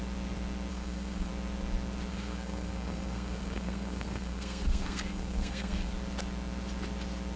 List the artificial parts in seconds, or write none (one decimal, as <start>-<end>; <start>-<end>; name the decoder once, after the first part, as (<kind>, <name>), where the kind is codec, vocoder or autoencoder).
0.7-1.3 (codec, SNAC); 2.1-5.9